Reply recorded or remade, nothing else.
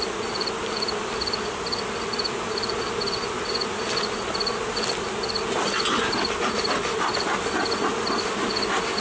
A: recorded